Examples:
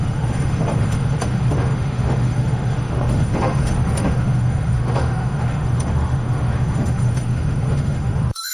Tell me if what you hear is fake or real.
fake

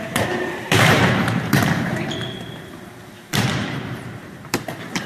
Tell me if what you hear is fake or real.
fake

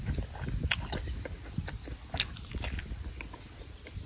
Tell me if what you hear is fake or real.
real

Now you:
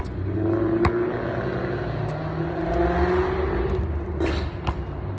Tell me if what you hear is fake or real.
real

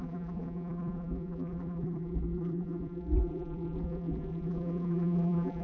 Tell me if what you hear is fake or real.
fake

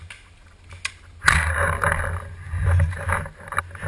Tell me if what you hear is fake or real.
real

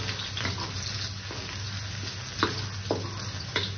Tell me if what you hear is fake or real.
real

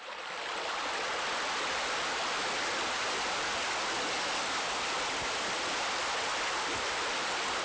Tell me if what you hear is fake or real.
real